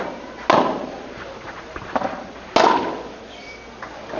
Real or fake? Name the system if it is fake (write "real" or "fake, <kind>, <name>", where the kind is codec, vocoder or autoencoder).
real